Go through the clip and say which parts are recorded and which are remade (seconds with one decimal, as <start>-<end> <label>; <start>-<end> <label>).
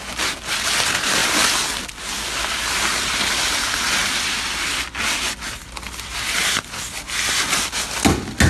0.0-8.5 recorded